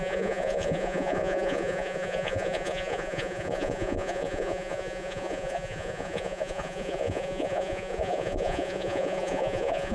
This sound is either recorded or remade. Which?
remade